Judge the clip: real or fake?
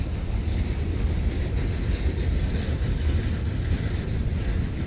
real